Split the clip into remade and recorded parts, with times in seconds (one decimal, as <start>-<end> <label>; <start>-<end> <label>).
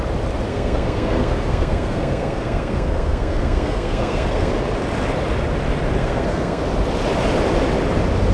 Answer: 0.0-0.5 recorded; 0.5-4.5 remade; 4.5-6.0 recorded; 6.0-6.6 remade; 6.6-8.3 recorded